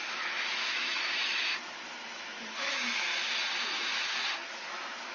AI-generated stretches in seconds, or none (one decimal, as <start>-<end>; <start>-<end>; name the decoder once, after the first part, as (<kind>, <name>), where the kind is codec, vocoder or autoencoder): 0.0-3.1 (autoencoder, DAC-VAE); 3.8-5.1